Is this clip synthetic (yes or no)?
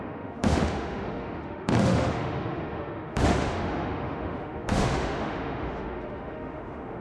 yes